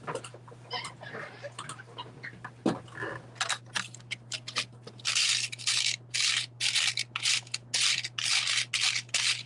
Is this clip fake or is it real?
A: real